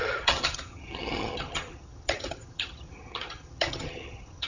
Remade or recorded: remade